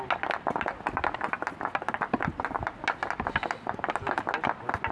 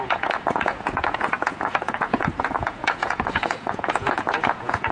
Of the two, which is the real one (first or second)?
first